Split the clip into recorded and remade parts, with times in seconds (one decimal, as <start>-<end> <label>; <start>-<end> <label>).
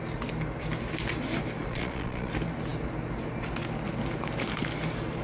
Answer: 0.0-1.7 recorded; 1.7-2.3 remade; 2.3-5.2 recorded